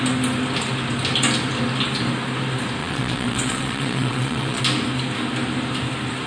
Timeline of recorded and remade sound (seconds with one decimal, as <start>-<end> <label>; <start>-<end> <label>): 0.0-2.8 recorded; 2.8-4.6 remade; 4.6-6.3 recorded